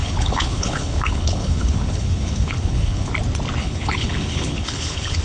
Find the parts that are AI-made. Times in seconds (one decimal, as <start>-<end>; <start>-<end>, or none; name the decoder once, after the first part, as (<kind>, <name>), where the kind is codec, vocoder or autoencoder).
0.0-3.1 (codec, HILCodec); 3.6-5.2